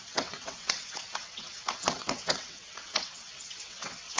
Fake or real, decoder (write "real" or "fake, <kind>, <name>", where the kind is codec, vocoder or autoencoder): fake, vocoder, WaveNeXt